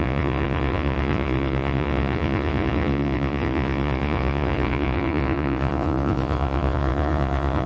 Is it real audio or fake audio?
fake